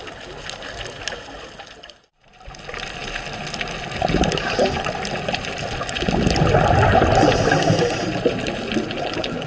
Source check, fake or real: real